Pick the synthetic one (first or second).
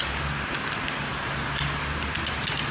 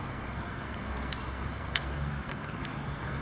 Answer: second